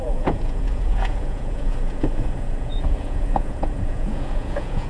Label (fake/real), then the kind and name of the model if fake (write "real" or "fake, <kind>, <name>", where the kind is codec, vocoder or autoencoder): fake, vocoder, Vocos